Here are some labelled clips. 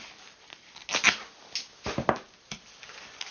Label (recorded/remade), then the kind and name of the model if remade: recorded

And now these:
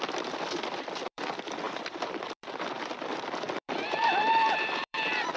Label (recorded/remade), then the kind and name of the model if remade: remade, vocoder, BigVGAN v2